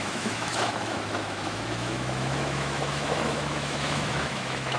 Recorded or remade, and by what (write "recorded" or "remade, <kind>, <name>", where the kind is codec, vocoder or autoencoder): remade, autoencoder, DAC-VAE